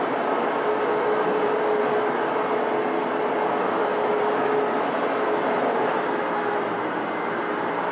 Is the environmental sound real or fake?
fake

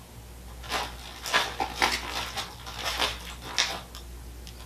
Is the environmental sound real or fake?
real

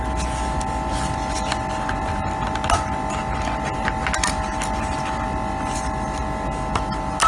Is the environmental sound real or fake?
real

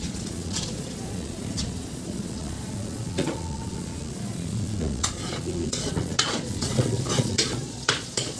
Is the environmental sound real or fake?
fake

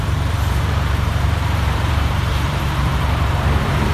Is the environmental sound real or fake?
fake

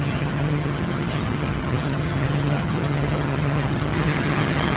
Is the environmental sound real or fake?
fake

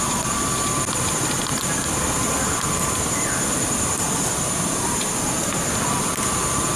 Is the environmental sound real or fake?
real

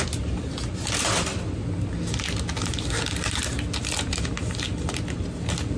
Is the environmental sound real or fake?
real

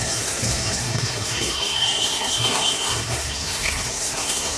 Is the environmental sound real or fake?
fake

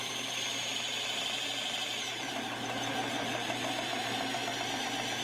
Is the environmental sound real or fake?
real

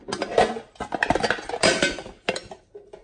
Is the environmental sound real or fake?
real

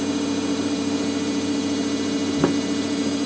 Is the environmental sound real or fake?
real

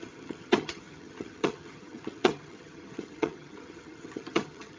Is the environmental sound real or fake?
fake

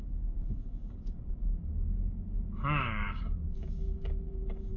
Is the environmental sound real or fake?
fake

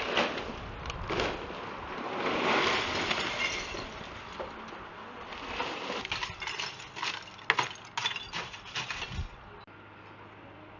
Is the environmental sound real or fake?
real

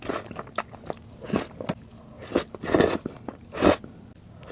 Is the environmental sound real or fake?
real